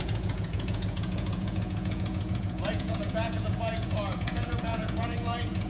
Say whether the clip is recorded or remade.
remade